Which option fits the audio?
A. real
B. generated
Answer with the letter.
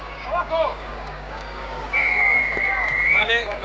B